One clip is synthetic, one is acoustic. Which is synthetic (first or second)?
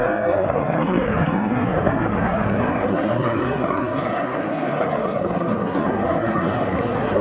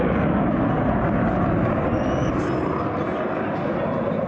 first